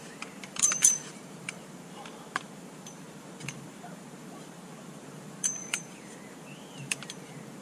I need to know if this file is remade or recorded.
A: remade